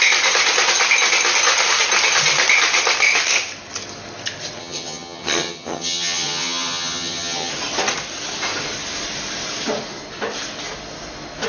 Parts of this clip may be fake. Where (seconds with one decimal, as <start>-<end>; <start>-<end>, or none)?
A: 4.6-7.5